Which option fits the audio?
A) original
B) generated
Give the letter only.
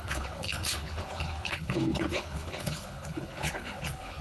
B